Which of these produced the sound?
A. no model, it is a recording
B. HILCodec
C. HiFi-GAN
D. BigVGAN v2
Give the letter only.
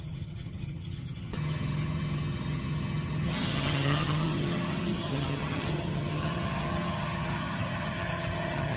C